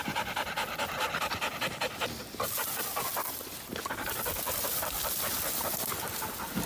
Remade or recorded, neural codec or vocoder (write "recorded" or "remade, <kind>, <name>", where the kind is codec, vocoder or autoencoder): recorded